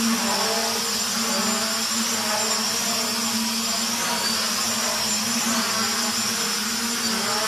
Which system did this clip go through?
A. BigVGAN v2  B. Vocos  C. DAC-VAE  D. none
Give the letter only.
D